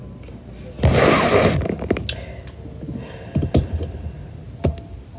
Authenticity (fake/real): real